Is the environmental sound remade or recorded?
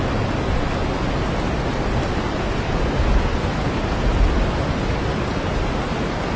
recorded